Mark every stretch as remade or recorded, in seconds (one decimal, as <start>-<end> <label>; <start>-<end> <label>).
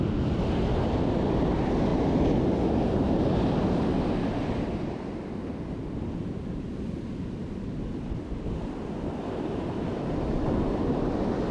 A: 0.0-11.5 recorded